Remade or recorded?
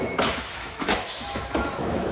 remade